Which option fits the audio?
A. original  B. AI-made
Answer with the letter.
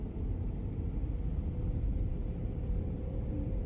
A